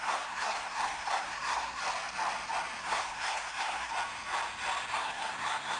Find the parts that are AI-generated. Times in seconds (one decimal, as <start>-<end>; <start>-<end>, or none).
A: 0.0-1.8; 2.8-3.9; 4.9-5.8